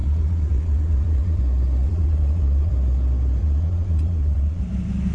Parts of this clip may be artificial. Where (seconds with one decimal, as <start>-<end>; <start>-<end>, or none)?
0.0-1.4; 1.8-2.7; 3.4-4.6